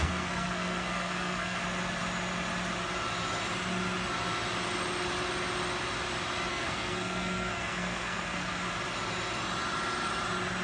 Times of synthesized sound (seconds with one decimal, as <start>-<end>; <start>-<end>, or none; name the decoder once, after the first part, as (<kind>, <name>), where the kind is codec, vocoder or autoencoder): 0.0-1.6 (codec, SNAC); 6.5-8.7